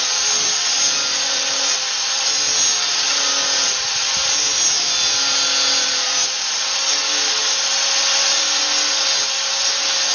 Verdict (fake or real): real